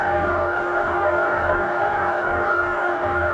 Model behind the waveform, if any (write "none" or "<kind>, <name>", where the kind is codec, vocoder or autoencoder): codec, DAC